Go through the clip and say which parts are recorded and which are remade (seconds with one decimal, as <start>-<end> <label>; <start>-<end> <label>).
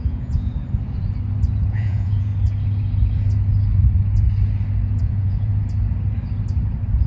0.0-0.5 remade; 0.5-1.7 recorded; 1.7-2.3 remade; 2.3-5.0 recorded; 5.0-5.5 remade; 5.5-7.1 recorded